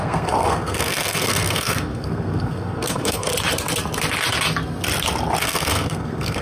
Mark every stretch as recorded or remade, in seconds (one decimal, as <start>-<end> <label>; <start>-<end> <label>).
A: 0.0-3.3 remade; 3.3-5.4 recorded; 5.4-6.4 remade